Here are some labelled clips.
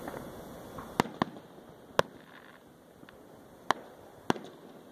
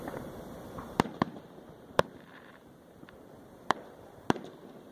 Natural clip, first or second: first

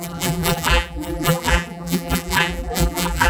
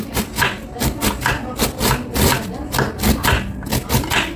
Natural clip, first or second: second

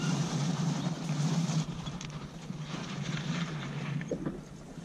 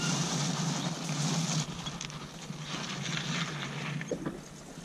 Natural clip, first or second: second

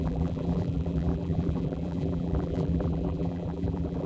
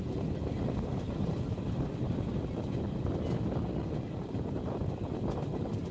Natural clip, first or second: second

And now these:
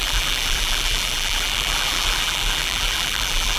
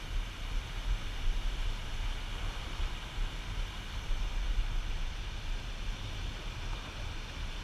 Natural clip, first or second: second